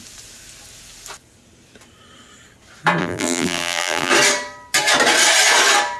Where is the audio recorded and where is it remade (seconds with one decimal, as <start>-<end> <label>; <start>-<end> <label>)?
0.0-3.0 recorded; 3.0-4.1 remade; 4.1-6.0 recorded